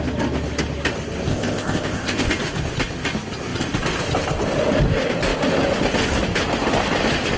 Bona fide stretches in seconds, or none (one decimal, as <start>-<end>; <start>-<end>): 0.0-1.3; 2.3-7.4